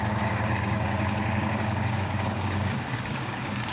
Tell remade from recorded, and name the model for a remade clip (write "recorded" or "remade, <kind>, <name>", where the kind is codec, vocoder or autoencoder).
remade, codec, DAC